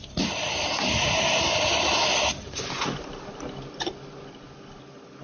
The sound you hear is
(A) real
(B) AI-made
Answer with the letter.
A